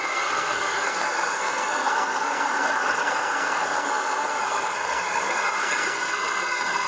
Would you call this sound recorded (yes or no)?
no